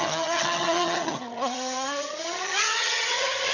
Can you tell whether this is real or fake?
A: fake